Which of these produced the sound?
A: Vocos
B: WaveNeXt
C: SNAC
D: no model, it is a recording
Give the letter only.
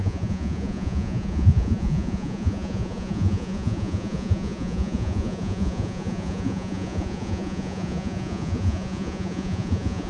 A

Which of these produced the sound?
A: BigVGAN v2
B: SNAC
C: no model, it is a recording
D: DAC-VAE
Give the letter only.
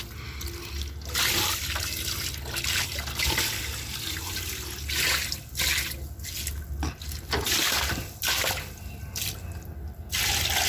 C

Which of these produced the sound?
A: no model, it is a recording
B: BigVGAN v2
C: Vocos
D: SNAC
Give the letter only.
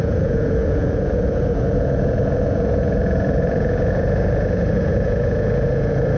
C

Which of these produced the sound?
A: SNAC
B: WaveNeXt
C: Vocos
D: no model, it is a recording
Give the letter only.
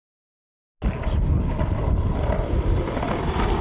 D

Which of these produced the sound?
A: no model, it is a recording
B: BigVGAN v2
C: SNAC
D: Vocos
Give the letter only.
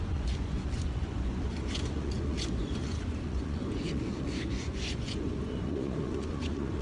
D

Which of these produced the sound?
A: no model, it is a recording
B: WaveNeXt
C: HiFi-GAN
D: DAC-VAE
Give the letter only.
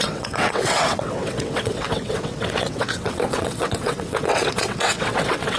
B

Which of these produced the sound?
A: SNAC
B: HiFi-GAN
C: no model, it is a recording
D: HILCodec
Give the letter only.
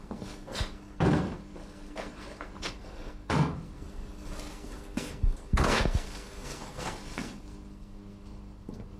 A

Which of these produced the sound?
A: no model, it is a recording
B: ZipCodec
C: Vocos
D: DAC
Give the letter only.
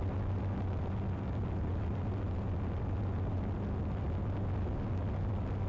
A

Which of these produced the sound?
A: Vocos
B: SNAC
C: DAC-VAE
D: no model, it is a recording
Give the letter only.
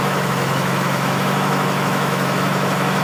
C